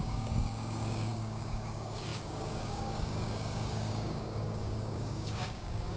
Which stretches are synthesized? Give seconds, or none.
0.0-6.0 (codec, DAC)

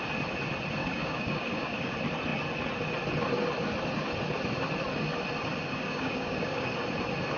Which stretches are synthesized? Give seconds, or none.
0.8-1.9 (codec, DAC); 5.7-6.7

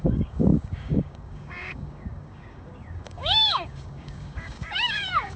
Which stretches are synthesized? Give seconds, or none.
0.0-5.4 (codec, DAC)

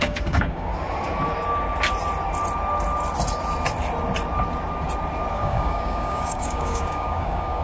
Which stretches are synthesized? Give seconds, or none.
0.0-0.7 (codec, DAC); 5.3-7.6

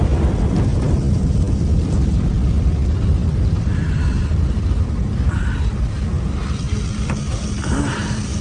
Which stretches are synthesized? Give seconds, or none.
none

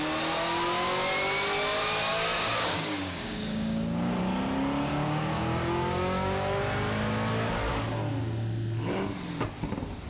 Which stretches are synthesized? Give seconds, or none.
2.1-4.2 (codec, DAC); 4.9-6.6